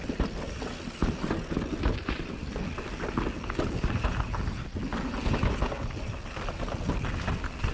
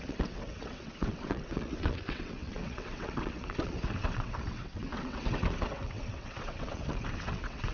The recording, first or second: first